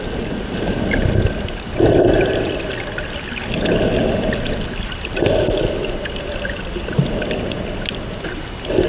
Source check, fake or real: real